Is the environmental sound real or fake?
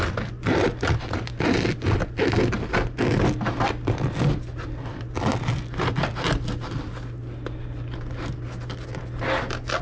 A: real